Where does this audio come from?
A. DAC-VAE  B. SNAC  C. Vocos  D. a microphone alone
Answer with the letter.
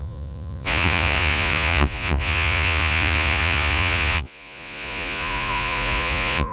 C